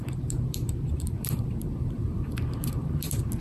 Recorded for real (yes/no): no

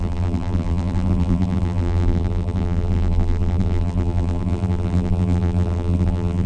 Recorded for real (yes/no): no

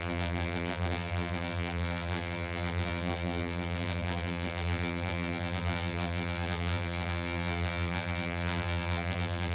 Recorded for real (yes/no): no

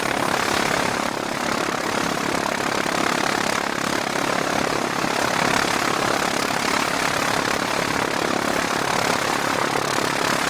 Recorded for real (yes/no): yes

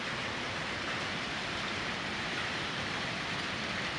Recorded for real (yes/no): yes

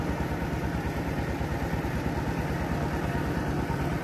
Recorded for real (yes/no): yes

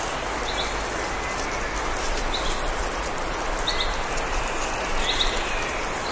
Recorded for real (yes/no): yes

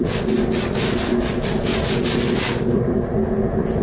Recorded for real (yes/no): yes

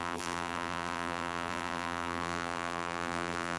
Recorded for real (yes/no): no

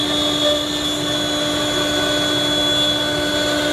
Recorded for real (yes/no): yes